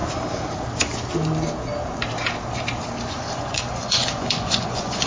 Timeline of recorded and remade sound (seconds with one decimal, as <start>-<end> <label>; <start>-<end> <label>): 0.0-3.1 recorded; 3.1-5.1 remade

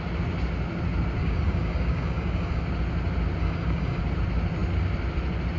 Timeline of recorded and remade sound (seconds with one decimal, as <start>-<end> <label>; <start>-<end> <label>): 0.0-1.2 recorded; 1.2-2.6 remade; 2.6-3.4 recorded; 3.4-4.0 remade; 4.0-5.6 recorded

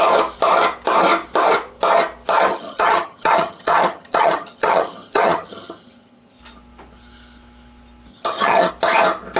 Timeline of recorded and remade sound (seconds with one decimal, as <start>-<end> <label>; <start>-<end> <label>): 0.0-2.5 recorded; 2.5-6.4 remade; 6.4-8.1 recorded; 8.1-8.7 remade; 8.7-9.4 recorded

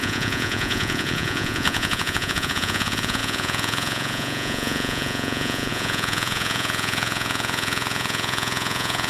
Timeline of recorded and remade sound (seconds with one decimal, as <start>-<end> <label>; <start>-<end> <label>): 0.0-9.1 remade

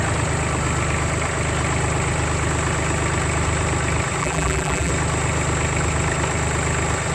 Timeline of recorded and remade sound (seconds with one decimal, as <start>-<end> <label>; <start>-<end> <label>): 0.0-4.2 recorded; 4.2-4.9 remade; 4.9-7.1 recorded

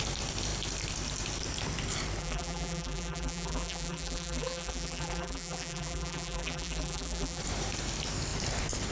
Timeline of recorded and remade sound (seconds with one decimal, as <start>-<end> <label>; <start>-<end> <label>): 0.0-2.2 recorded; 2.2-7.4 remade; 7.4-8.9 recorded

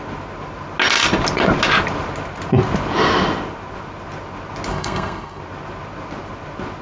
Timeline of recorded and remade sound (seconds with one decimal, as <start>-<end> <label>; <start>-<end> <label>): 0.0-4.7 recorded; 4.7-5.4 remade; 5.4-6.8 recorded

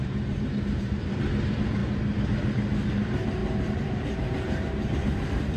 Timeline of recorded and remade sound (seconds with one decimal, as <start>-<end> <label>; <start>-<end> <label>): 0.0-1.8 remade; 1.8-2.9 recorded; 2.9-5.6 remade